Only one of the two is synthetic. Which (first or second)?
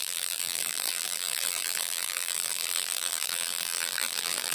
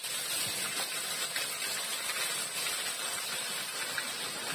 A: first